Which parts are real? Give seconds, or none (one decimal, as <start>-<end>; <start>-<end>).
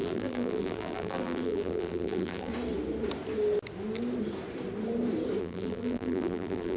2.5-5.4